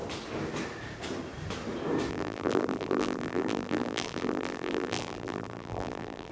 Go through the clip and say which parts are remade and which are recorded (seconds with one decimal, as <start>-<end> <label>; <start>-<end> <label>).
0.0-2.1 recorded; 2.1-6.3 remade